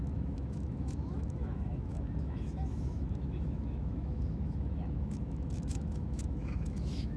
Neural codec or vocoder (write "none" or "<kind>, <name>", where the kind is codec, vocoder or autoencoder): autoencoder, DAC-VAE